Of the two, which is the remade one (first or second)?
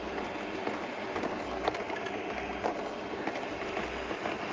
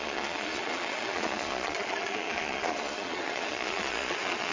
second